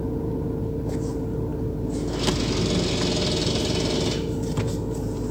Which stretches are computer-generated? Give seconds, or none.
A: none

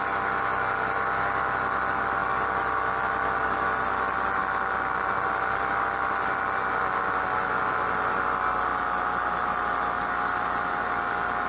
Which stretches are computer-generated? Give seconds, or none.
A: none

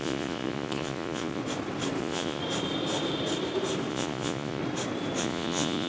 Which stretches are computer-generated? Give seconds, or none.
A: 0.0-1.4 (vocoder, Vocos); 2.0-2.4; 3.9-4.6; 5.2-5.9

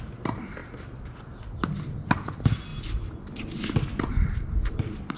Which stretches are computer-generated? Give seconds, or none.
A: none

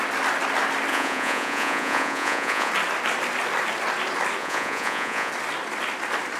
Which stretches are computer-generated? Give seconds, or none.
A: 0.9-2.7 (vocoder, Vocos); 4.4-5.3

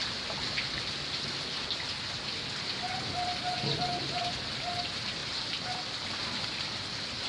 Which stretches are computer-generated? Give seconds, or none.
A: none

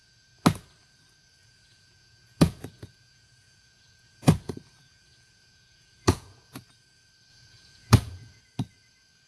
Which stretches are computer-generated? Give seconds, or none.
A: 1.4-6.6 (vocoder, Vocos); 7.3-8.4

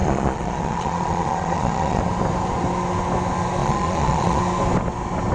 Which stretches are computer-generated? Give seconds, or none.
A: 0.0-2.0 (vocoder, Vocos); 3.6-4.4